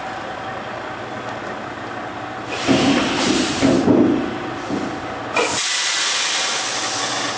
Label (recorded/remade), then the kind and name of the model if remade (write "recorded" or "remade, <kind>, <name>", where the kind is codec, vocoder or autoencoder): recorded